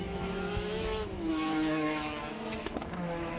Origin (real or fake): fake